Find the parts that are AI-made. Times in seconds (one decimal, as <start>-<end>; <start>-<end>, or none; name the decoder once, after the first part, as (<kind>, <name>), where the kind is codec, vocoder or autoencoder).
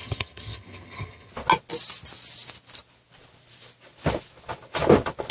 0.0-1.3 (vocoder, HiFi-GAN)